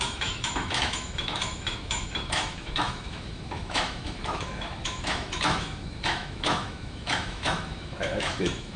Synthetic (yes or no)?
yes